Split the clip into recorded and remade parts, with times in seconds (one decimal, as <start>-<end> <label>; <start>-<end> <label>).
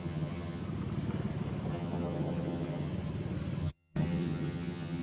0.0-0.6 remade; 0.6-1.7 recorded; 1.7-2.9 remade; 2.9-3.6 recorded; 3.6-5.0 remade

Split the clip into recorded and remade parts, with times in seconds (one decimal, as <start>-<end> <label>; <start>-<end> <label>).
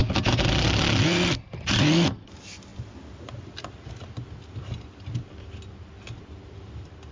0.0-7.1 recorded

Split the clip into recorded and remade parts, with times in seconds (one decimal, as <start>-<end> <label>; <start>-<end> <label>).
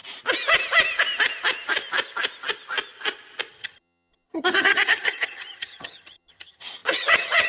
0.0-3.5 recorded; 3.5-7.5 remade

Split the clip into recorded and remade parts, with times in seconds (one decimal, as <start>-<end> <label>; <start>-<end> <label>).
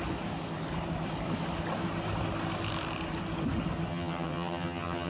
0.0-3.9 recorded; 3.9-5.1 remade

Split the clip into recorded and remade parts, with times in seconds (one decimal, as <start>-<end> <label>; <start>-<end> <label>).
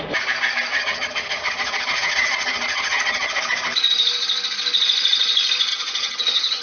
0.0-0.7 recorded; 0.7-3.4 remade; 3.4-5.7 recorded; 5.7-6.6 remade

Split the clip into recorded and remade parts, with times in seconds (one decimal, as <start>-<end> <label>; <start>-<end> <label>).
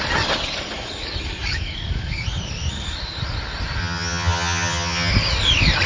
0.0-3.8 recorded; 3.8-5.1 remade; 5.1-5.9 recorded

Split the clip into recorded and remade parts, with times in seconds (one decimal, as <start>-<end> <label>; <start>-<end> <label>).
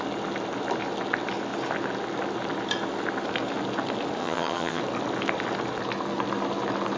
0.0-4.2 recorded; 4.2-4.8 remade; 4.8-7.0 recorded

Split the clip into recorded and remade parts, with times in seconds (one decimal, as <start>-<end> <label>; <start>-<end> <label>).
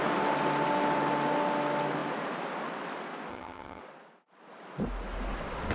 0.0-3.3 recorded; 3.3-3.8 remade; 3.8-5.7 recorded